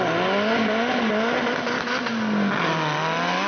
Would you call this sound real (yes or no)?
yes